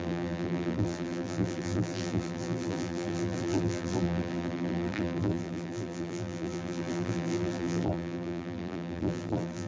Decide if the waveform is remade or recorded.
remade